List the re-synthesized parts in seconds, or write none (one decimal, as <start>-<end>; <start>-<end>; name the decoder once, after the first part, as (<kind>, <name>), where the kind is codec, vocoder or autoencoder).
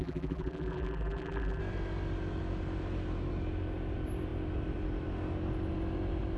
0.0-1.6 (vocoder, BigVGAN v2)